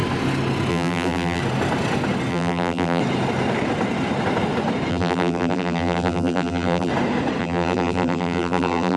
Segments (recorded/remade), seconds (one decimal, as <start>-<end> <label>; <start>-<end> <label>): 0.0-0.7 recorded; 0.7-1.4 remade; 1.4-2.3 recorded; 2.3-3.0 remade; 3.0-4.9 recorded; 4.9-6.9 remade; 6.9-7.4 recorded; 7.4-9.0 remade